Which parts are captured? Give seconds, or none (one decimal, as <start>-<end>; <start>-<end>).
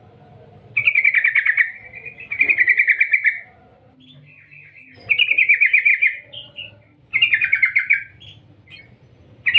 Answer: 0.0-9.6